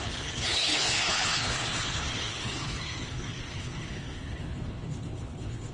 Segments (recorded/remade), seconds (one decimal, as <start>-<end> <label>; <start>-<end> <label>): 0.0-5.7 remade